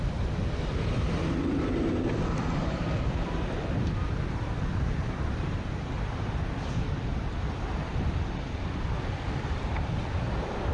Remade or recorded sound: remade